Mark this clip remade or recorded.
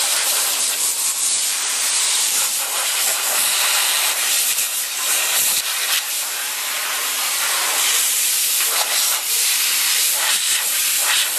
remade